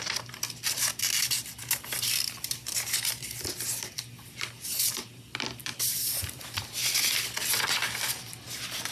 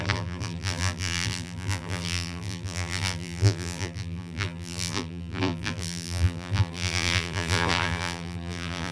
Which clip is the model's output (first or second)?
second